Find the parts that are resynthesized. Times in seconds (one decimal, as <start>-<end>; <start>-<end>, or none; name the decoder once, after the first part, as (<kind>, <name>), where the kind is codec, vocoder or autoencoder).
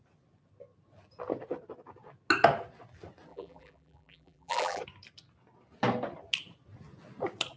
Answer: 3.3-4.8 (vocoder, BigVGAN v2)